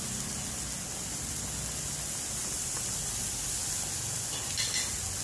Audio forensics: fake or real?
real